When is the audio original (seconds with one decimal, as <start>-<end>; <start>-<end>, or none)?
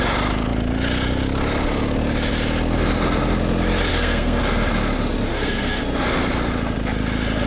0.0-3.9; 4.4-5.3; 5.8-7.5